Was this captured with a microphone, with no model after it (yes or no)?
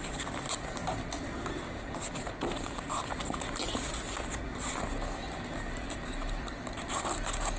yes